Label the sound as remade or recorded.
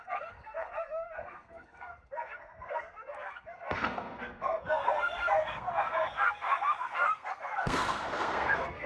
remade